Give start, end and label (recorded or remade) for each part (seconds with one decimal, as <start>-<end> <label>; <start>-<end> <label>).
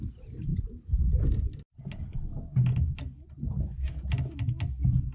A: 0.0-5.1 recorded